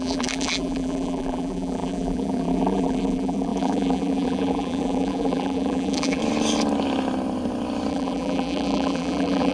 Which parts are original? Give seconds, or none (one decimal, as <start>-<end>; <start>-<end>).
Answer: 6.2-7.9